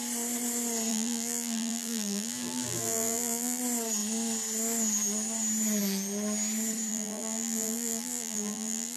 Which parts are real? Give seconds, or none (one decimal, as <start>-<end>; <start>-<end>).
0.0-0.9; 3.6-6.9